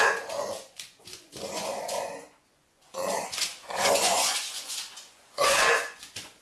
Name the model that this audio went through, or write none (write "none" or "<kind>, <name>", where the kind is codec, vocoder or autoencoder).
vocoder, Vocos